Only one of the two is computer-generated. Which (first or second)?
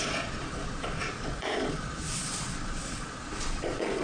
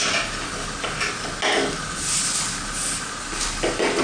first